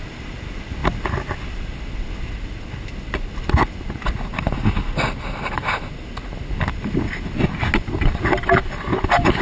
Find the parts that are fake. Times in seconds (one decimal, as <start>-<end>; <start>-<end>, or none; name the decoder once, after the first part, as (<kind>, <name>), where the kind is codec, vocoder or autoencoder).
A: none